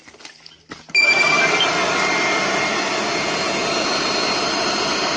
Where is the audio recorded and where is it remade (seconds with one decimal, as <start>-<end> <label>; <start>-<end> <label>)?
0.0-5.2 recorded